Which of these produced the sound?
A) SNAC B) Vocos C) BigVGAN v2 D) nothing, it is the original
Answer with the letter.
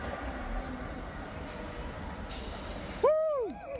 D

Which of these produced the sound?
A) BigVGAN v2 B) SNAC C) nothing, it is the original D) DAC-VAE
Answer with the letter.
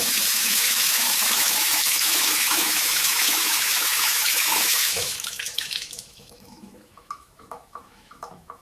D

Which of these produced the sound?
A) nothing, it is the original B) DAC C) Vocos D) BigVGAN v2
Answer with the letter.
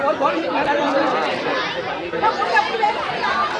A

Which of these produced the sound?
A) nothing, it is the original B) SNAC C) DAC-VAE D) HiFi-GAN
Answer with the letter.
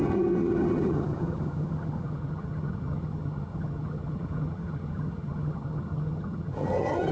D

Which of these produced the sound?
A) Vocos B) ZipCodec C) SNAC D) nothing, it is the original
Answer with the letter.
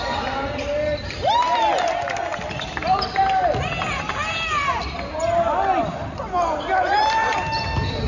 D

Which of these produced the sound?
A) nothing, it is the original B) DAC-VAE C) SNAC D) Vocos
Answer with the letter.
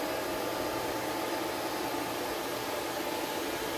A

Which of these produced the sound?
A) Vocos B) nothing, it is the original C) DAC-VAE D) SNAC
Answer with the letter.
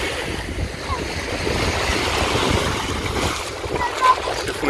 B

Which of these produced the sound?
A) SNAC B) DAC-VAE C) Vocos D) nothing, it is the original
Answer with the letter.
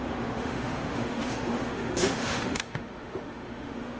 B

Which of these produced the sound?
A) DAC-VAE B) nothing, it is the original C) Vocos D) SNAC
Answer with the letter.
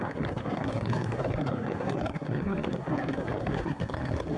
D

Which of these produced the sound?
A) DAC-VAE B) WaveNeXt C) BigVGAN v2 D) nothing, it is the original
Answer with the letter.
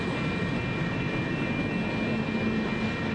D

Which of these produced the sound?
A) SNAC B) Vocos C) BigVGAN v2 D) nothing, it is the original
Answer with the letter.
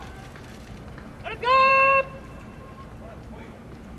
C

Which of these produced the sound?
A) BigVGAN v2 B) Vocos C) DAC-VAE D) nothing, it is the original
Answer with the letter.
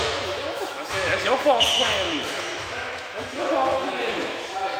C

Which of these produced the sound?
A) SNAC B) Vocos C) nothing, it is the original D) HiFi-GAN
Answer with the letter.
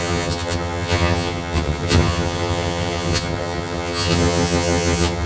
D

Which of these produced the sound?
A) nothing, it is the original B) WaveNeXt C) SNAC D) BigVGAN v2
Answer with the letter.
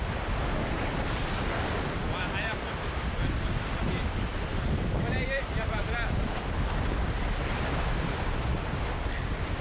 A